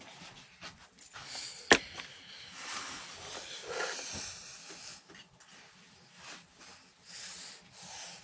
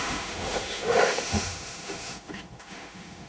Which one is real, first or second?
first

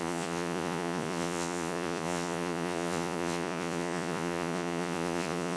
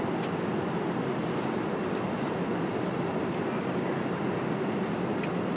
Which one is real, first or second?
second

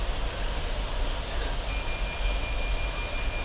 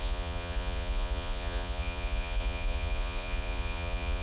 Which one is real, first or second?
first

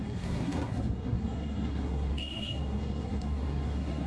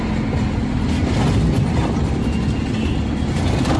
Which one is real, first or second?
second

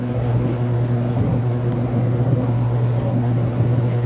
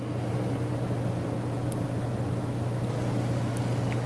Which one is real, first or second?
second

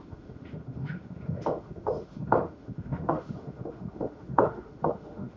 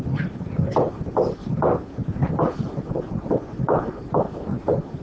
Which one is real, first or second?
second